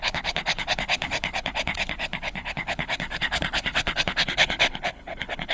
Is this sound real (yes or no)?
no